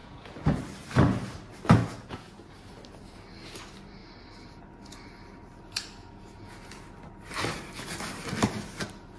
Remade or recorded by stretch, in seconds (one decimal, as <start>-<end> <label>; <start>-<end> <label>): 0.0-0.6 remade; 0.6-1.8 recorded; 1.8-2.5 remade; 2.5-6.0 recorded; 6.0-6.7 remade; 6.7-9.2 recorded